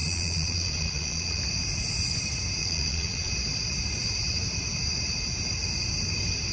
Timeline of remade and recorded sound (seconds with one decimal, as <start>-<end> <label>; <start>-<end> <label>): 0.0-1.4 remade; 1.4-2.6 recorded; 2.6-3.3 remade; 3.3-6.5 recorded